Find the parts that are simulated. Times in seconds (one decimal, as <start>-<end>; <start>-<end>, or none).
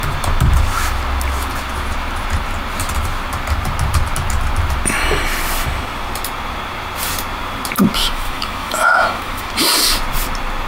8.0-9.5